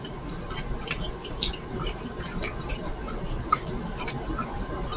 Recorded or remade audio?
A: remade